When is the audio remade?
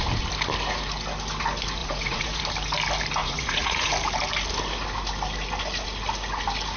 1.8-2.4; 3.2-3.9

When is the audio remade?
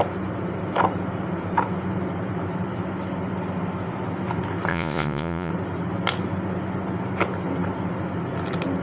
4.7-5.5